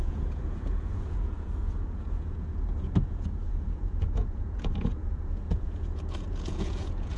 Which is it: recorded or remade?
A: remade